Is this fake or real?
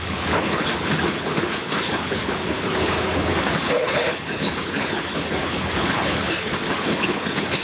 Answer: fake